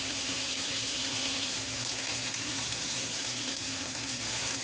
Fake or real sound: fake